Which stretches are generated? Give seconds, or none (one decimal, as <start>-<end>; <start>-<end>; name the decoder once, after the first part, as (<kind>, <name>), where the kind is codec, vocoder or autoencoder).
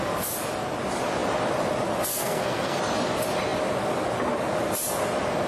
2.1-2.8 (codec, SNAC)